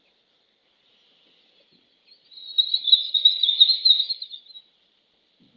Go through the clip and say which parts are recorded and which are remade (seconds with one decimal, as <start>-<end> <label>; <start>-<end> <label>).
0.0-5.6 recorded